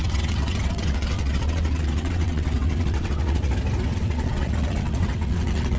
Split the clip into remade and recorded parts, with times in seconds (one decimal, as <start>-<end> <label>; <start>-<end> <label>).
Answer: 0.0-3.5 remade; 3.5-3.9 recorded; 3.9-5.8 remade